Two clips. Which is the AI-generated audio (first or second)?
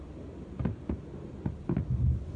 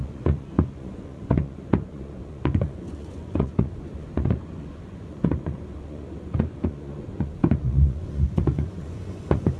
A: second